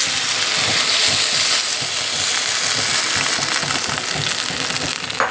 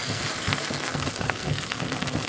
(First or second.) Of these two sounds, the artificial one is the second